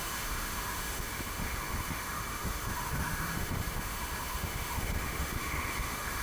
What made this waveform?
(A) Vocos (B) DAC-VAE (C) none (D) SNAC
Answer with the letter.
B